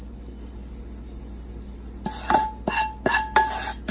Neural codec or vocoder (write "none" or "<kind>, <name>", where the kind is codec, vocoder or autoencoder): none